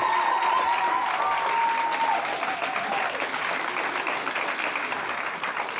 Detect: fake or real real